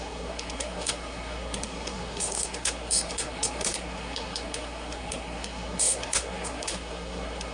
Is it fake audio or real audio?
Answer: fake